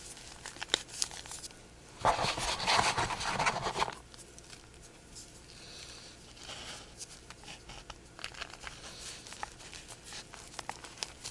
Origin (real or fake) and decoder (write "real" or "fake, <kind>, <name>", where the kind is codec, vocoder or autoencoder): real